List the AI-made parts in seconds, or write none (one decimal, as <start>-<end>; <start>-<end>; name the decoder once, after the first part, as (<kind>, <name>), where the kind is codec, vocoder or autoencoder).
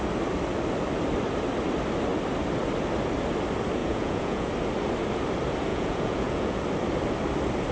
3.8-4.5 (vocoder, Vocos); 5.7-6.6